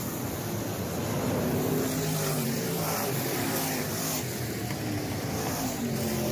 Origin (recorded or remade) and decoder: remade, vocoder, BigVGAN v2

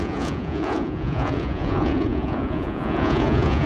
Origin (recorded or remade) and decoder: remade, vocoder, Vocos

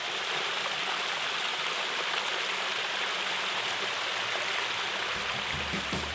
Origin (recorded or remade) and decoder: recorded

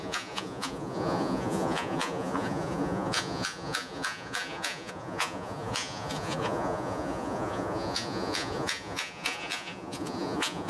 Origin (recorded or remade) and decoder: remade, vocoder, Vocos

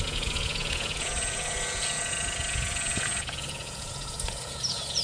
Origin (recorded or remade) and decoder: remade, vocoder, Vocos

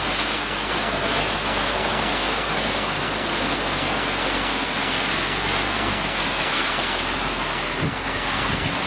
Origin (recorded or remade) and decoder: remade, codec, SNAC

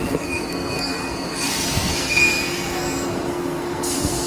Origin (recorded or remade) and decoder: remade, codec, SNAC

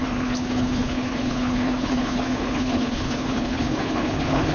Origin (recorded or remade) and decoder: remade, codec, HILCodec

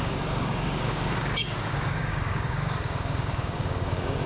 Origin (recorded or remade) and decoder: remade, codec, DAC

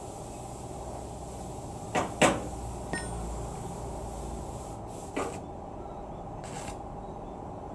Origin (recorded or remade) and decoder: recorded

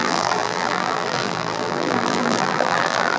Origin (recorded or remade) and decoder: remade, vocoder, BigVGAN v2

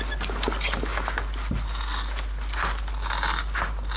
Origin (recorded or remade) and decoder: recorded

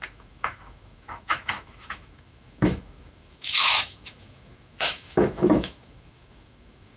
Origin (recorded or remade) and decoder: remade, autoencoder, DAC-VAE